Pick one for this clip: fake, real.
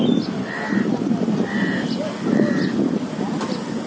real